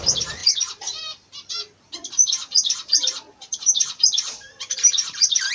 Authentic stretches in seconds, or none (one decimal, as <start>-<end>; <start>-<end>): 0.0-0.4; 1.6-2.2